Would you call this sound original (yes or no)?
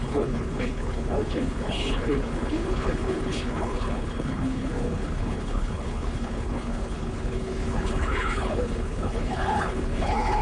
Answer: no